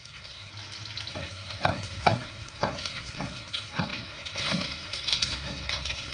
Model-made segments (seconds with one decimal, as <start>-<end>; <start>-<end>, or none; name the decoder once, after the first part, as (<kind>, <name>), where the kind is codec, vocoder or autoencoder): 0.0-0.5 (codec, SNAC); 1.1-6.1